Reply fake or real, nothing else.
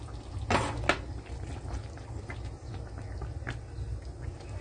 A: real